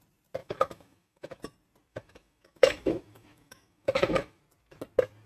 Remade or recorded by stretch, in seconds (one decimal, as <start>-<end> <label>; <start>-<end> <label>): 0.0-0.4 recorded; 0.4-1.4 remade; 1.4-1.9 recorded; 1.9-4.4 remade; 4.4-5.3 recorded